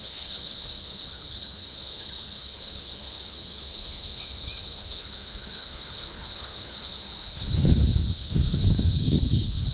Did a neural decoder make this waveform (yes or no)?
yes